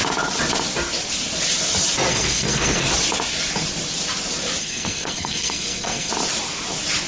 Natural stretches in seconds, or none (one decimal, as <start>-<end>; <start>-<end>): 0.0-2.1; 2.9-4.6; 6.1-7.1